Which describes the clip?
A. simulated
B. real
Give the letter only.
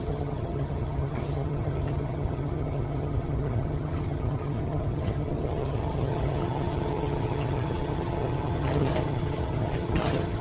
A